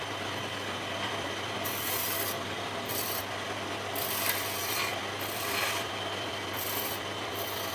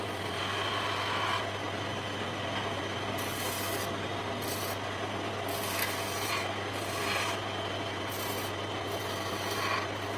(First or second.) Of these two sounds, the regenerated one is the first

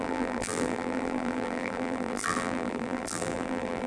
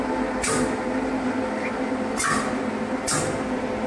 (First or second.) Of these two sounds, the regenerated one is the first